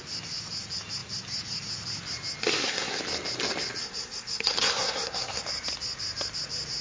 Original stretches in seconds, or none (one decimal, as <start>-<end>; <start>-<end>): 0.0-2.4; 3.0-3.8; 5.4-6.8